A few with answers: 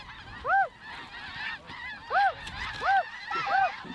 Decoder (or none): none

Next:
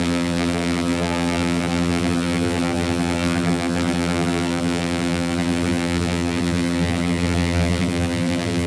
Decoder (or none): vocoder, BigVGAN v2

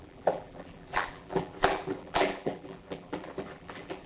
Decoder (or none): vocoder, BigVGAN v2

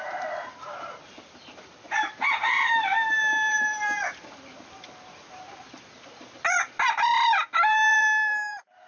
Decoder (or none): vocoder, BigVGAN v2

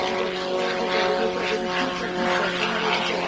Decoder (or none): none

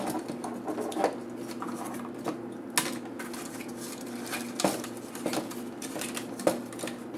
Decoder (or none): none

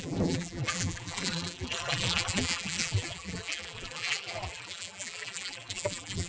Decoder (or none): vocoder, BigVGAN v2